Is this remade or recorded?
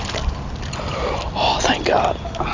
recorded